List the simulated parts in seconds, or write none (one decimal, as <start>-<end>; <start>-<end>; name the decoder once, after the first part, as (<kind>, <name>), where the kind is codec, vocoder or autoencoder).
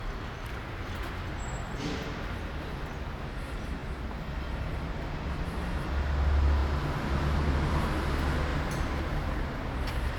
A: 8.5-9.4 (vocoder, BigVGAN v2)